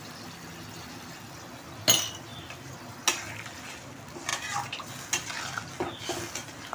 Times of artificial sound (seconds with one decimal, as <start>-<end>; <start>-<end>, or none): 4.3-4.9